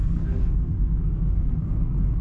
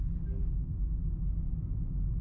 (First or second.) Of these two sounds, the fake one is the first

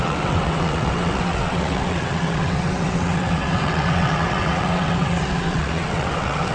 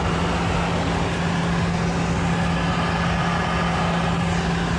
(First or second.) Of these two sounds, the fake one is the first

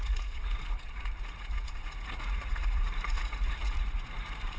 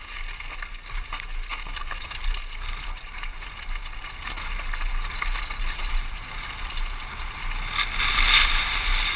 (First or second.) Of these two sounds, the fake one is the first